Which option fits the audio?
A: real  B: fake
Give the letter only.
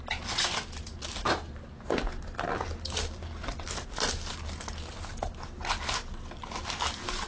A